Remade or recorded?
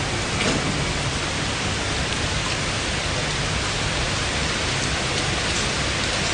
recorded